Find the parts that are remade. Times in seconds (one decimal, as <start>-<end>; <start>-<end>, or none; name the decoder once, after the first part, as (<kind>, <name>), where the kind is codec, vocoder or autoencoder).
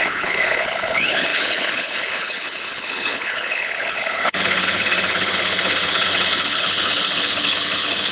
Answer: 0.0-8.1 (codec, HILCodec)